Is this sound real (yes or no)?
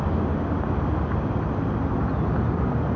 yes